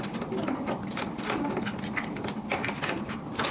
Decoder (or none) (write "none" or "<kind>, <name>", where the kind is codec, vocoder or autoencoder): none